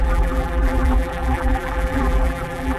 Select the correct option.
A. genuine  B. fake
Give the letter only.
B